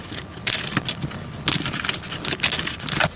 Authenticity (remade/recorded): recorded